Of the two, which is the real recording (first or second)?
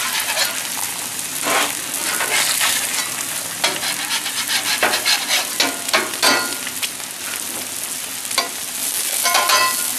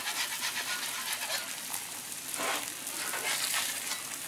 first